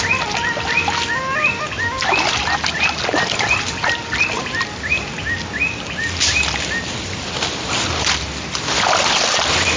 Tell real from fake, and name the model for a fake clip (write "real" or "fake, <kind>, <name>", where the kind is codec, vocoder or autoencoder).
real